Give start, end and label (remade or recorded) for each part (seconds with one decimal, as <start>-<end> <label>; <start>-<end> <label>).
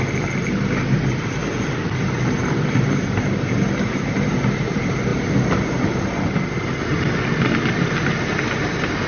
0.0-9.1 recorded